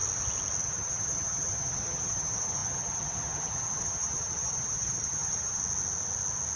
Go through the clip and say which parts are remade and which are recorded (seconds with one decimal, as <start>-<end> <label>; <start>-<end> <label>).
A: 0.0-0.6 recorded; 0.6-5.6 remade; 5.6-6.6 recorded